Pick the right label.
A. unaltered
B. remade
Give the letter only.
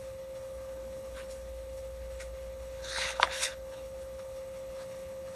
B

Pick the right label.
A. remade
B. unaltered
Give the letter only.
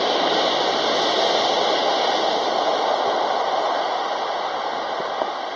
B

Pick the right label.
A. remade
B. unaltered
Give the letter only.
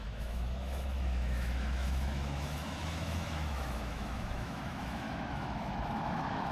A